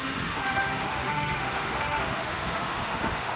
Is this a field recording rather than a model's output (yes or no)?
no